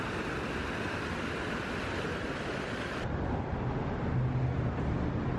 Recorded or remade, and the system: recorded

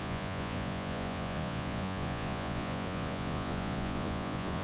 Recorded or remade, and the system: remade, vocoder, Vocos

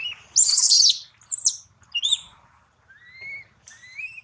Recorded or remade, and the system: recorded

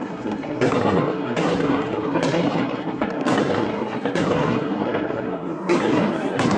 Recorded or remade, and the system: remade, codec, SNAC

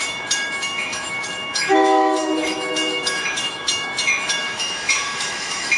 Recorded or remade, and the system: remade, autoencoder, DAC-VAE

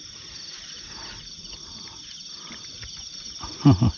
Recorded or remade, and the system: recorded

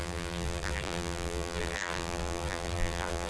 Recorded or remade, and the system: remade, vocoder, BigVGAN v2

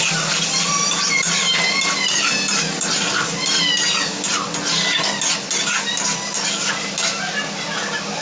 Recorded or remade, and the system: recorded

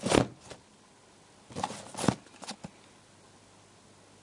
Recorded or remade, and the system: recorded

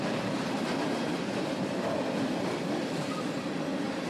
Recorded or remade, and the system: recorded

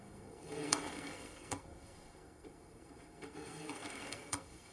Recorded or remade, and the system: remade, codec, SNAC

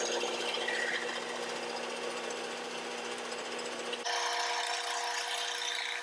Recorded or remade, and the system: recorded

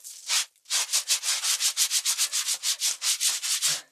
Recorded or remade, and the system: recorded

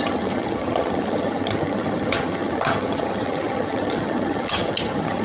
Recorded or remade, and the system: remade, vocoder, HiFi-GAN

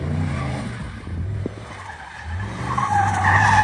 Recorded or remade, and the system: remade, vocoder, BigVGAN v2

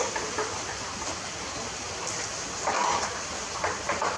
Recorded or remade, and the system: recorded